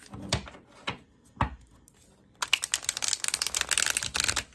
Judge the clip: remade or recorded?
recorded